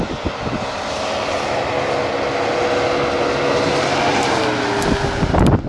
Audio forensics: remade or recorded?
recorded